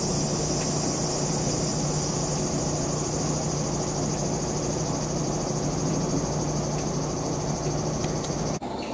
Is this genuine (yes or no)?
yes